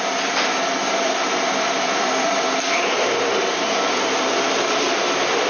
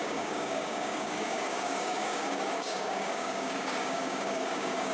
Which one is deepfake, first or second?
second